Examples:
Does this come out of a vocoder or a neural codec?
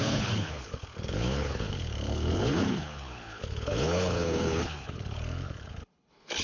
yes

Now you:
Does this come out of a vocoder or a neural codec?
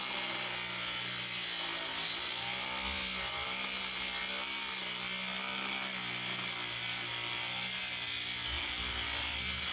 no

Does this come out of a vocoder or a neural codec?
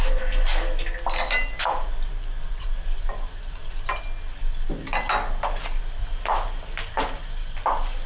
no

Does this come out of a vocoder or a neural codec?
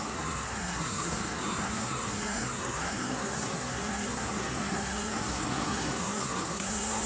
yes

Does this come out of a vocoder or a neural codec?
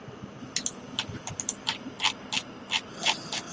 no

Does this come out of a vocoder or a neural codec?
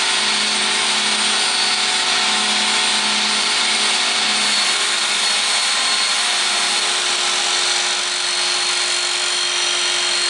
no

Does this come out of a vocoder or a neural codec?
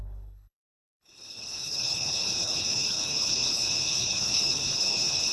yes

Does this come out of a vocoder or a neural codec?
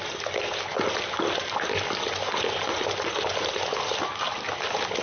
no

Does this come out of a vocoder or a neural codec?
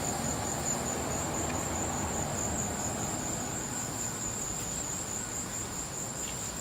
no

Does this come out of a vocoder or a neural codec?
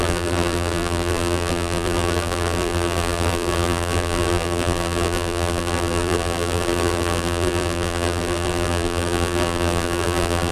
yes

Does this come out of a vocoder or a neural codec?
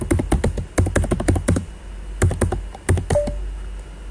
no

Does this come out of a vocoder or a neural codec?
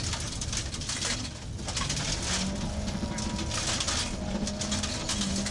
no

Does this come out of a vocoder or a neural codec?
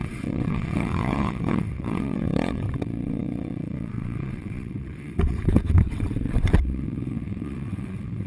yes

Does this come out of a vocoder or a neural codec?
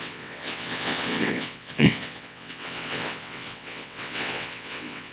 yes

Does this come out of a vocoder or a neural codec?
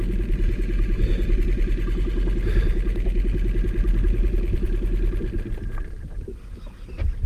no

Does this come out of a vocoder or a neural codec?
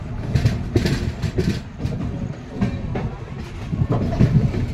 no